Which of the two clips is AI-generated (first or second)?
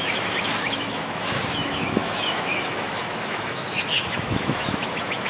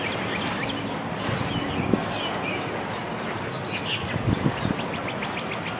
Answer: first